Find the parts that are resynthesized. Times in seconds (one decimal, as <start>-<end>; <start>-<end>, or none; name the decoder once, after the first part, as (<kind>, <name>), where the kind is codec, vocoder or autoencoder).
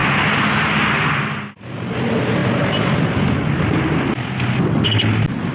none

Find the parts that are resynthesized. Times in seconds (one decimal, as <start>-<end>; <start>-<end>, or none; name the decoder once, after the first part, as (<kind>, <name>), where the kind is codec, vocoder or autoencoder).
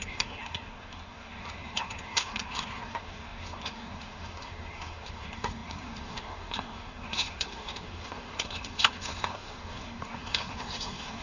0.0-11.2 (codec, SNAC)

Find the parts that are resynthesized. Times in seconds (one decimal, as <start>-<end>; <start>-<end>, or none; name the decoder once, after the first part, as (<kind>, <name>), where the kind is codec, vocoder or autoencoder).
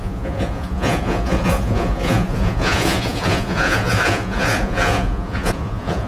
0.0-6.1 (vocoder, Vocos)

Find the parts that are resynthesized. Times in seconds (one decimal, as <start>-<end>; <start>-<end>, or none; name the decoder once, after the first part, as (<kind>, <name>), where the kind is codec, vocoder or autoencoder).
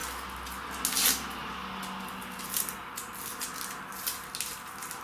none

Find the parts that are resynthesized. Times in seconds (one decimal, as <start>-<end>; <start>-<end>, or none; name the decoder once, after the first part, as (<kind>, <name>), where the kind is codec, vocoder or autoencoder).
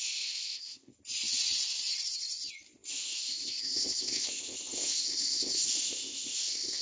0.0-0.9 (codec, ZipCodec); 2.9-6.8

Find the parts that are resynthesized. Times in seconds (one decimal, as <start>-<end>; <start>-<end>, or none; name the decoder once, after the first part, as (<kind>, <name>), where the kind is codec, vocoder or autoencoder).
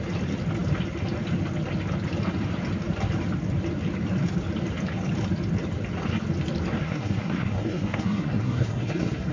6.8-9.3 (codec, SNAC)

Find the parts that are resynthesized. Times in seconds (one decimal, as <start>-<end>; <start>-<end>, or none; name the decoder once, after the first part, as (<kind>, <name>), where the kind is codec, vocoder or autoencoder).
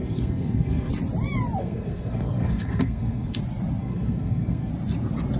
0.0-0.9 (codec, SNAC); 1.6-3.4; 3.8-4.7